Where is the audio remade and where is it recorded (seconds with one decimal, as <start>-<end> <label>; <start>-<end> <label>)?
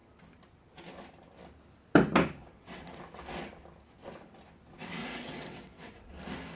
0.0-2.4 recorded; 2.4-3.0 remade; 3.0-5.0 recorded; 5.0-6.1 remade; 6.1-6.6 recorded